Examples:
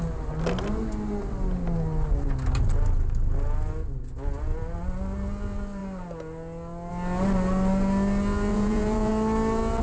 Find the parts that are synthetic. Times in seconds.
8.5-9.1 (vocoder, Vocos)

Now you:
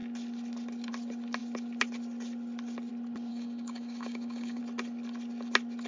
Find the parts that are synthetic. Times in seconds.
3.3-4.6 (codec, DAC)

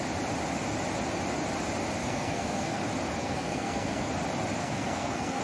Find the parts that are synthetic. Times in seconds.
2.0-2.8 (codec, SNAC); 3.2-4.1; 4.6-5.4

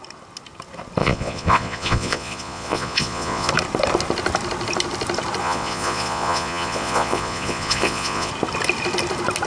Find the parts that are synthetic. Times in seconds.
1.0-3.5 (vocoder, Vocos); 5.4-8.3